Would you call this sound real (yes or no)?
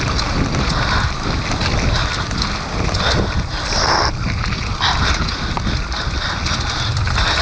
yes